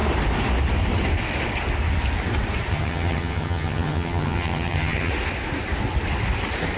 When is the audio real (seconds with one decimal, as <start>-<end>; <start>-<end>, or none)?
0.0-2.7; 5.1-6.8